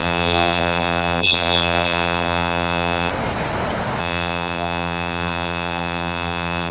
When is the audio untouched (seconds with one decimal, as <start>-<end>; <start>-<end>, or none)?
3.1-4.0